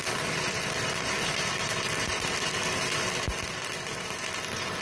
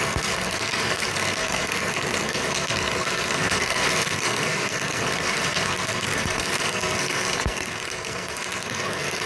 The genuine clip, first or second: first